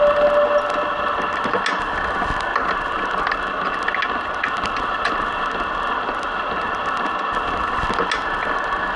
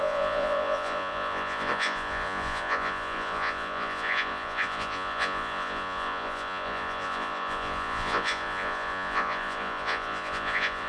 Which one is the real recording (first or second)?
first